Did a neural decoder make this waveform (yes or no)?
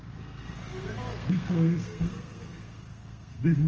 yes